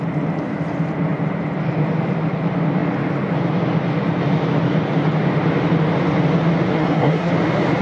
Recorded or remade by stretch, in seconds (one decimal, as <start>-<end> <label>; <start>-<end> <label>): 0.0-6.7 recorded; 6.7-7.3 remade; 7.3-7.8 recorded